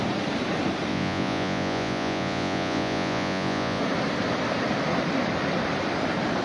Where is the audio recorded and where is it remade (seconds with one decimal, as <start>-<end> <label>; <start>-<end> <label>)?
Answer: 0.0-0.9 recorded; 0.9-3.8 remade; 3.8-6.4 recorded